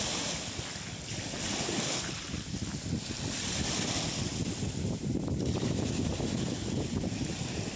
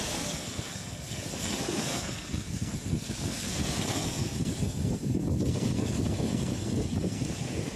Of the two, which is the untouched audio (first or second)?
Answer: first